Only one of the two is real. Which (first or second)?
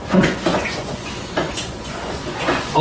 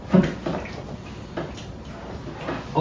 second